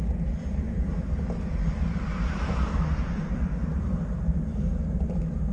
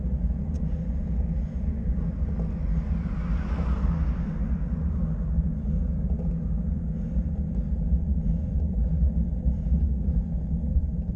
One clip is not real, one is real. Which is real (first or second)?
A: second